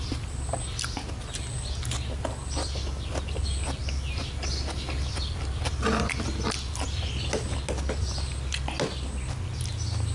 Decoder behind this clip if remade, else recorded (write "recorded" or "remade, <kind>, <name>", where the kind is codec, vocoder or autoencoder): recorded